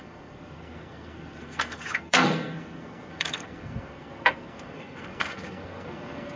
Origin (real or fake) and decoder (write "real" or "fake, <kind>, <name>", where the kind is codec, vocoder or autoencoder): fake, codec, SNAC